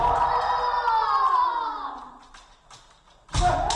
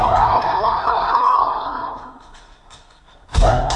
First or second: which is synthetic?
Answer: second